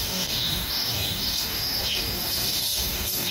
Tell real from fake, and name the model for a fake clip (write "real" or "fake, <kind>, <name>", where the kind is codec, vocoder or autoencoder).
fake, codec, DAC